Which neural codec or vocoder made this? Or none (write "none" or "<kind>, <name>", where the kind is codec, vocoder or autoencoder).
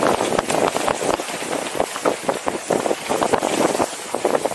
none